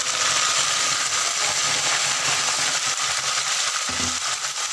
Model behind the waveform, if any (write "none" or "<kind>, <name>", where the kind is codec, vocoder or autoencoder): none